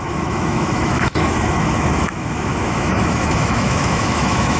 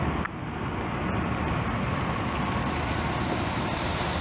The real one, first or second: second